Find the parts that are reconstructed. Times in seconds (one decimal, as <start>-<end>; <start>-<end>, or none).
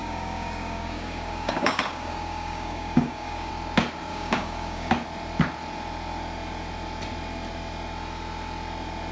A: 0.0-3.5; 4.1-4.9